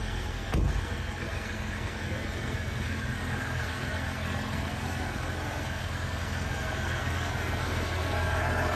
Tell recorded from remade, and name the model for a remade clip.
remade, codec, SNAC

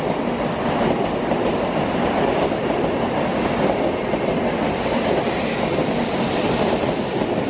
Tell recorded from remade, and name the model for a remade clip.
recorded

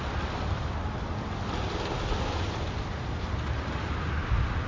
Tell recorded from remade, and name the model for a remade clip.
recorded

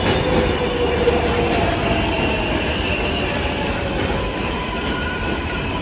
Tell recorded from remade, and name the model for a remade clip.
recorded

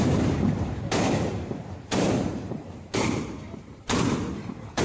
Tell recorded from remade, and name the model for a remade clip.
remade, vocoder, BigVGAN v2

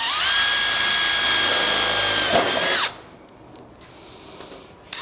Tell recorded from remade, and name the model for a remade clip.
recorded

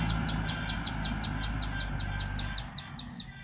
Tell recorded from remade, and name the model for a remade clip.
recorded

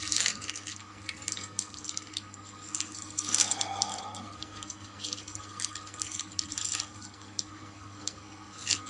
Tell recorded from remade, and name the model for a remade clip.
remade, codec, SNAC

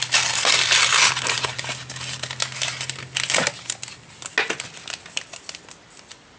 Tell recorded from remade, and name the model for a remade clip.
recorded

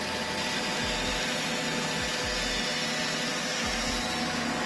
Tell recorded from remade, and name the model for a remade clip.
recorded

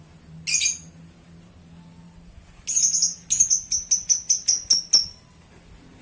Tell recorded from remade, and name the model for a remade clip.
recorded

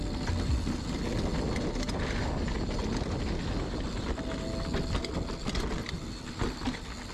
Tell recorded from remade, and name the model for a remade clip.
recorded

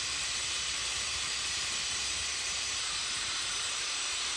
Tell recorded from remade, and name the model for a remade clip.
remade, vocoder, BigVGAN v2